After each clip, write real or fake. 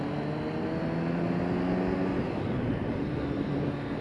real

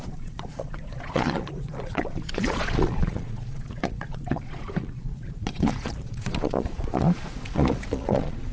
fake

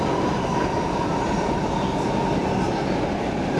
real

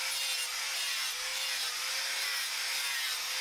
real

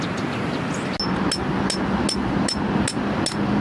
real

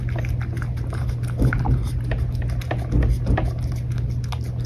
real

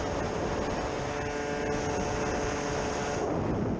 real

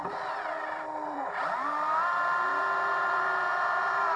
fake